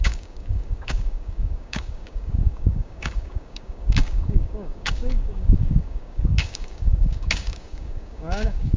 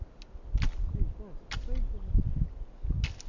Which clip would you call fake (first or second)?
first